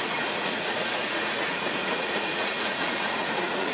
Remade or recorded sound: remade